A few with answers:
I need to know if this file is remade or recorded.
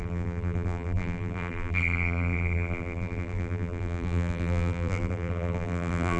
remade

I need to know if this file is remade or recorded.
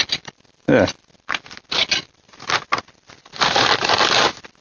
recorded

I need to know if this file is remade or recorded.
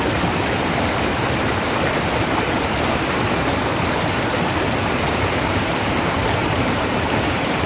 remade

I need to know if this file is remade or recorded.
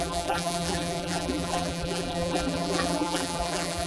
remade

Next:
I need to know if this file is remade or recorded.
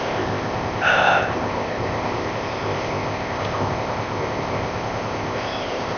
remade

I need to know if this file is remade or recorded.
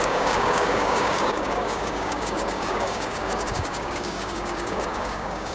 remade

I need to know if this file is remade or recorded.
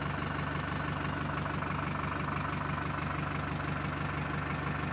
recorded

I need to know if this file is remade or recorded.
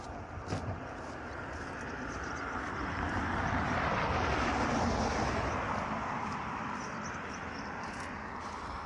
recorded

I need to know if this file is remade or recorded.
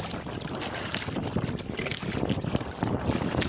recorded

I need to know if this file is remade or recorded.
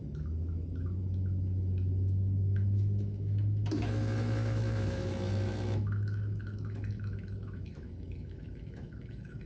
remade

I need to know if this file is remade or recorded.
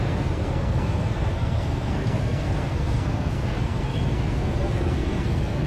remade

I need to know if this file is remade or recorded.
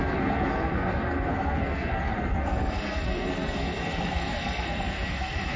remade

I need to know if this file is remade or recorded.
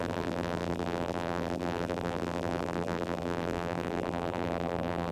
remade